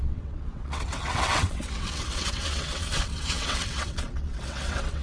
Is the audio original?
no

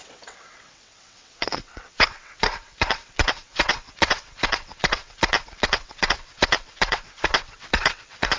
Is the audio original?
no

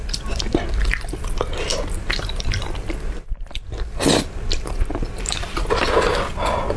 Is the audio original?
yes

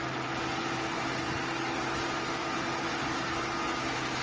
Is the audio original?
yes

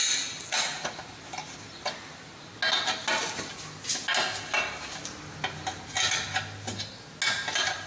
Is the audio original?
yes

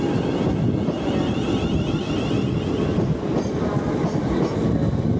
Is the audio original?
yes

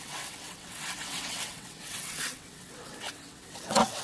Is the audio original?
no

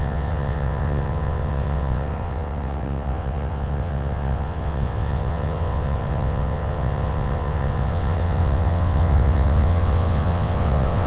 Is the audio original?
no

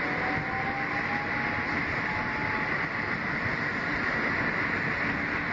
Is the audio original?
yes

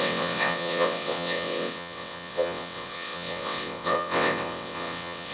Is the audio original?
no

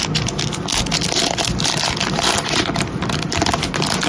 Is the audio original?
yes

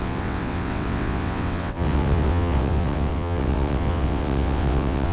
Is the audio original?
no